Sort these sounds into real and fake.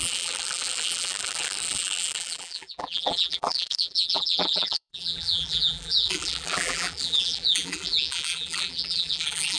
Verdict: fake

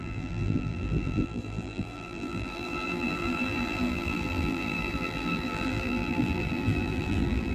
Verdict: fake